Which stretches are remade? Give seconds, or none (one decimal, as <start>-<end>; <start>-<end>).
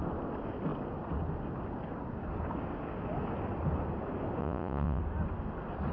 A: 4.4-5.0